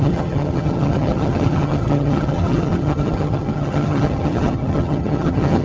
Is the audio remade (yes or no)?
yes